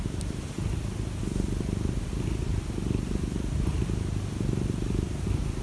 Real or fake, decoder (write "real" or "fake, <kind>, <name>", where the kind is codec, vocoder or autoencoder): real